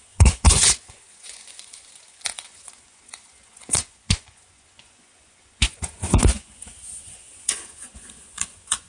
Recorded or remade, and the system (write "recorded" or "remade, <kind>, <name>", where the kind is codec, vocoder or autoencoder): remade, vocoder, Vocos